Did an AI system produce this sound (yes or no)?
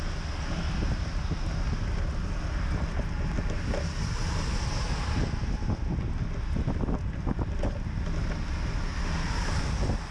no